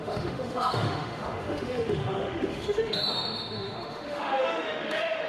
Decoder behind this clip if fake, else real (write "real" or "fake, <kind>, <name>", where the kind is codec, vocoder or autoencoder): fake, autoencoder, DAC-VAE